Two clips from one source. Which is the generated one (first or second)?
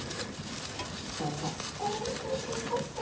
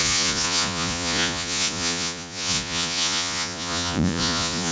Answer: second